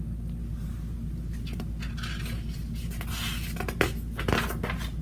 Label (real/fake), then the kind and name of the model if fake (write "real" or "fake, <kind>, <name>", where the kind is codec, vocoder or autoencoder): real